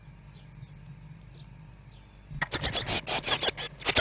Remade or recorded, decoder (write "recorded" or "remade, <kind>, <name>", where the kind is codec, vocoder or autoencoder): recorded